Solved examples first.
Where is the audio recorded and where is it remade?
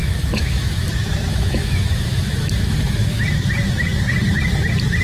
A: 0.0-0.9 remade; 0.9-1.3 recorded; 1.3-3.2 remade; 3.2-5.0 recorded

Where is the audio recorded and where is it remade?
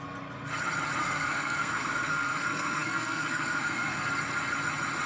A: 0.0-1.0 recorded; 1.0-4.1 remade; 4.1-5.1 recorded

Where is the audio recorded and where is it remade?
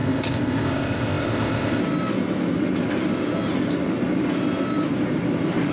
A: 0.0-1.8 remade; 1.8-5.7 recorded